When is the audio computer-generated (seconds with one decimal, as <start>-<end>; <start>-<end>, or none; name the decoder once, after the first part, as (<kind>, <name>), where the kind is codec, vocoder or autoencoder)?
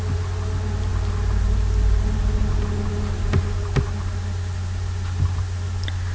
none